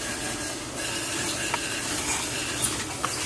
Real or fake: real